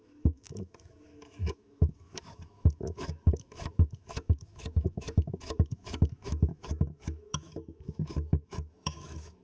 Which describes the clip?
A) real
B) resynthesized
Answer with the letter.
B